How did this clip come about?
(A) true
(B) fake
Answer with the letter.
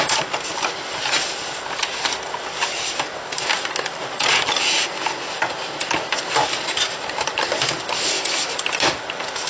A